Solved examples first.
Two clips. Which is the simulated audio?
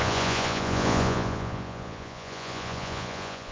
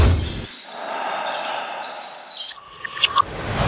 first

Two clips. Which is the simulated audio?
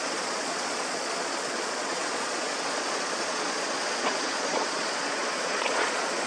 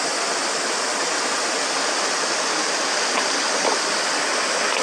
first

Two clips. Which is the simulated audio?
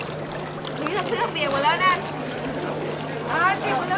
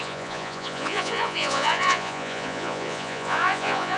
second